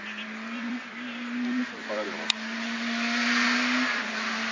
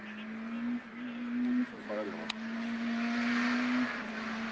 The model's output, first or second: first